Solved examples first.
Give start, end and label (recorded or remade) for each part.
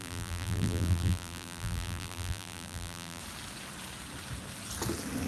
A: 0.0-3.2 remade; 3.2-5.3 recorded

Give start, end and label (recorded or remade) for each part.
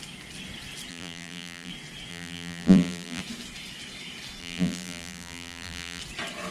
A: 0.0-0.9 recorded; 0.9-1.7 remade; 1.7-2.1 recorded; 2.1-3.2 remade; 3.2-4.4 recorded; 4.4-6.0 remade; 6.0-6.5 recorded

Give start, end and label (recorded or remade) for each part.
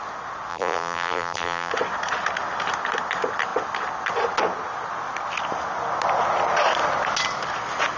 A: 0.0-0.5 recorded; 0.5-1.7 remade; 1.7-8.0 recorded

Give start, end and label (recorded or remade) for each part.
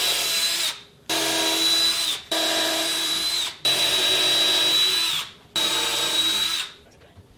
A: 0.0-2.1 recorded; 2.1-3.9 remade; 3.9-5.9 recorded; 5.9-6.5 remade; 6.5-7.4 recorded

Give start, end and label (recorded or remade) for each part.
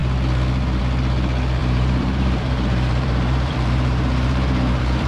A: 0.0-1.6 recorded; 1.6-5.1 remade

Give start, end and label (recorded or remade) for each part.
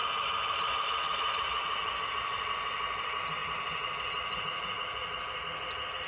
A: 0.0-2.1 remade; 2.1-3.4 recorded; 3.4-4.4 remade; 4.4-6.1 recorded